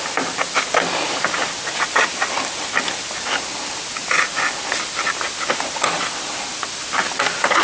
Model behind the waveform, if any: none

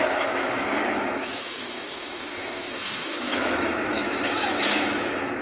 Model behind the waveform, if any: autoencoder, DAC-VAE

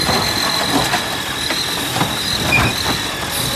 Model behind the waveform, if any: none